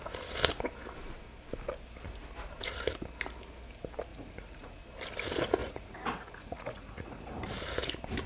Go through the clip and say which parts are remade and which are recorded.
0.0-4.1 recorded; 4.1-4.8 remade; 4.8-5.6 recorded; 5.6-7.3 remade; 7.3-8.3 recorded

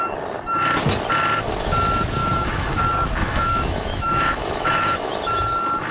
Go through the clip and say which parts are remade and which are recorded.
0.0-2.2 recorded; 2.2-2.8 remade; 2.8-3.3 recorded; 3.3-5.2 remade; 5.2-5.9 recorded

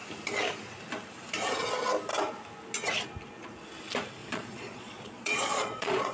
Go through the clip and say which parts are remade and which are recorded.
0.0-4.2 recorded; 4.2-6.1 remade

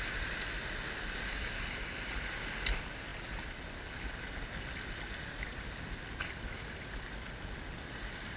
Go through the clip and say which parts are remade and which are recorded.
0.0-8.4 recorded

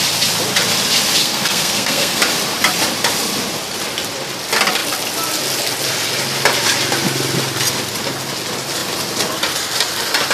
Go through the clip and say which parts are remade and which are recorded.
0.0-1.2 recorded; 1.2-2.2 remade; 2.2-10.3 recorded